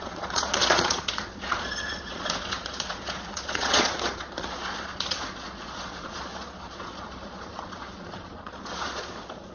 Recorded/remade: remade